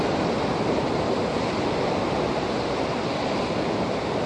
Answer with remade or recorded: recorded